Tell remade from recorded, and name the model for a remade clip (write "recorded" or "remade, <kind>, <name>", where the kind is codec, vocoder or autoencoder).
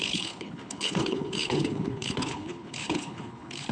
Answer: remade, codec, HILCodec